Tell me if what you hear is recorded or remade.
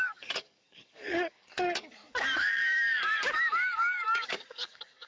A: remade